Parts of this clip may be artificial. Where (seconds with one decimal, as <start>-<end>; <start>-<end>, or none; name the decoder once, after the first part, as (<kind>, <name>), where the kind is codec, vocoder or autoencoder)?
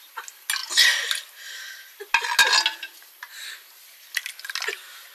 none